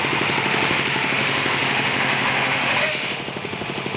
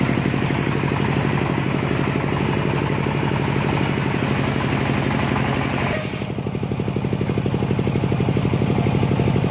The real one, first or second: second